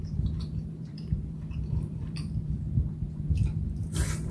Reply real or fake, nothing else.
fake